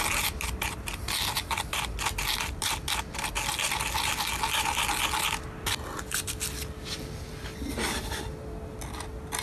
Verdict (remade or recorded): recorded